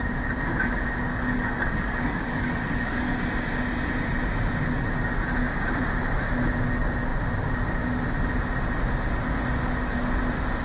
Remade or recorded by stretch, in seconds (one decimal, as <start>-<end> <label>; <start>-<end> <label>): 0.0-1.1 recorded; 1.1-3.2 remade; 3.2-10.6 recorded